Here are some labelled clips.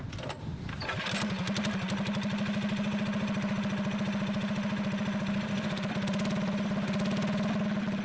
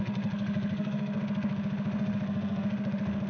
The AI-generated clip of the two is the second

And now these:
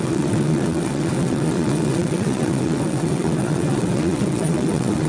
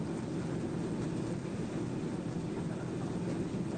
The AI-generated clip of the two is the first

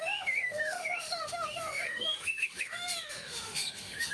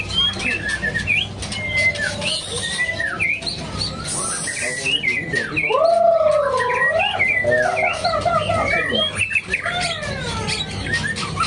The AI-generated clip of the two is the first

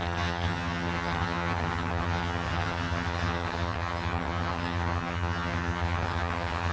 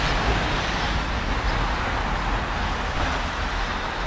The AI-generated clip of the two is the first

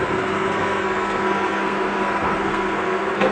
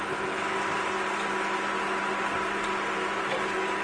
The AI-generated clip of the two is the first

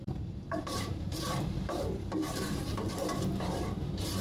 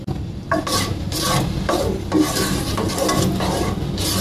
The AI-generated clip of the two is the first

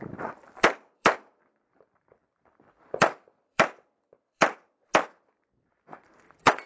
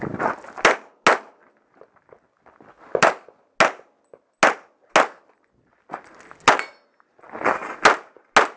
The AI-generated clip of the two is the first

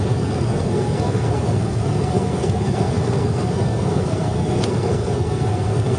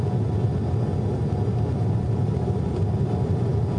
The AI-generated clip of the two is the first